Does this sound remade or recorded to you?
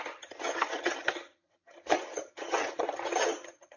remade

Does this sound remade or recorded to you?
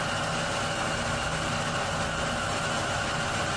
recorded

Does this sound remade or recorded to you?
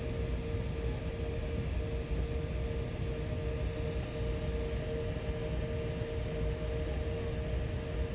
recorded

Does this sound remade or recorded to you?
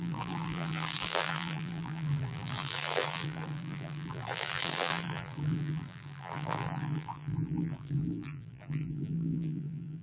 remade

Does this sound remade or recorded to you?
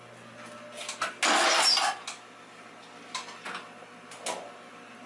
recorded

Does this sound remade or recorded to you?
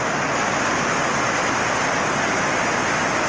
recorded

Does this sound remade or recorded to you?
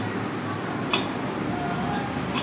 recorded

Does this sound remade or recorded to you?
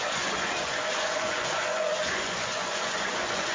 remade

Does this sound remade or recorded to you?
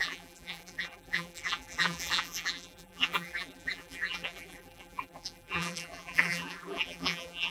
remade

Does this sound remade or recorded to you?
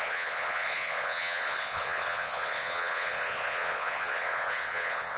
remade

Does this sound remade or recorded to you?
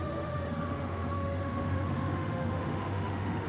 remade